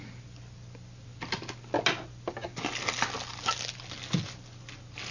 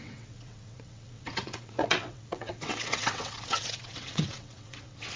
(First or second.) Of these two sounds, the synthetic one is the second